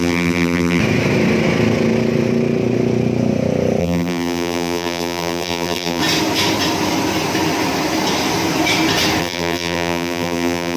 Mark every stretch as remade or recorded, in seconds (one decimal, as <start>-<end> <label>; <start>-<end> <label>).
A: 0.0-0.8 remade; 0.8-3.8 recorded; 3.8-6.0 remade; 6.0-9.2 recorded; 9.2-10.8 remade